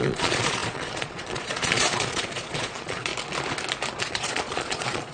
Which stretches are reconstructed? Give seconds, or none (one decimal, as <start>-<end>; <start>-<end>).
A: 0.0-3.1; 4.0-5.1